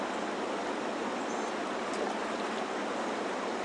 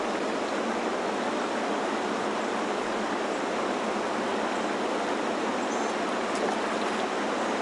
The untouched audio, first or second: second